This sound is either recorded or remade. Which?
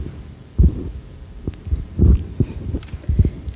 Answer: recorded